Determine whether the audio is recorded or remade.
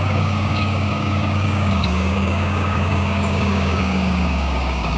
remade